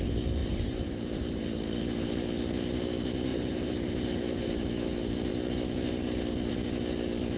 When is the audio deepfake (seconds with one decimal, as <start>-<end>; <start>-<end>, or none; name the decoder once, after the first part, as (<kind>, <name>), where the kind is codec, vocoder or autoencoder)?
0.4-1.4 (vocoder, BigVGAN v2); 3.3-4.7